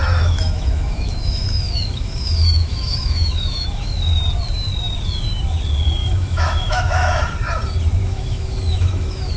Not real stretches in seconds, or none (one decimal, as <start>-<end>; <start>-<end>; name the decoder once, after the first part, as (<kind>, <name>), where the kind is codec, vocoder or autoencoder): 0.0-4.2 (autoencoder, DAC-VAE); 6.0-7.2; 8.0-9.4